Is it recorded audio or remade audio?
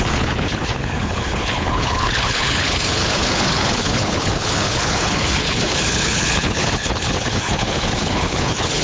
remade